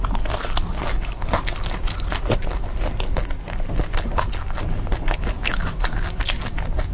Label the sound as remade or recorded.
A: recorded